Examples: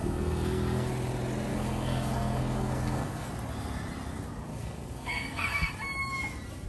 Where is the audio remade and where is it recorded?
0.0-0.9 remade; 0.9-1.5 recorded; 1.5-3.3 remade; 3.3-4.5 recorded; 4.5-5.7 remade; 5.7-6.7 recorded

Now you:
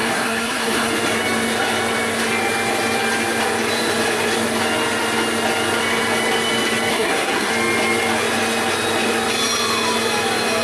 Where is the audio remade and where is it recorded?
0.0-0.9 remade; 0.9-6.9 recorded; 6.9-7.5 remade; 7.5-10.6 recorded

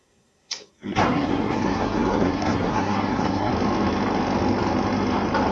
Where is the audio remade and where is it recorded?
0.0-3.5 remade; 3.5-5.5 recorded